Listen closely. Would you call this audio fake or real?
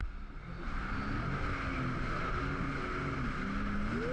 real